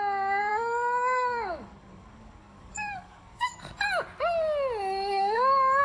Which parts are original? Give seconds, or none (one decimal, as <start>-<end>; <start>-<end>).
0.0-0.5; 3.5-4.8